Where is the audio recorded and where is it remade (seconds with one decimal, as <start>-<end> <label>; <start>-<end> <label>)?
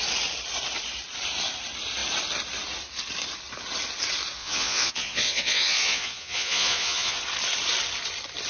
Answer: 0.0-4.4 recorded; 4.4-7.2 remade; 7.2-8.5 recorded